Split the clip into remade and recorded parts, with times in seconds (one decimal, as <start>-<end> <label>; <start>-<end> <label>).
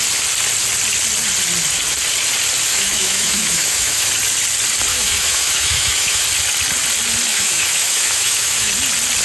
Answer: 0.0-2.7 recorded; 2.7-4.1 remade; 4.1-4.9 recorded; 4.9-6.2 remade; 6.2-7.3 recorded; 7.3-8.7 remade; 8.7-9.2 recorded